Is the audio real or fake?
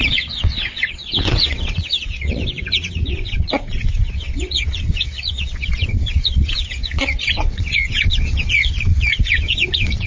fake